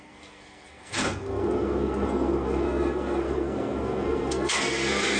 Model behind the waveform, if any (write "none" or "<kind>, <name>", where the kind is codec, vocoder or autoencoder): codec, SNAC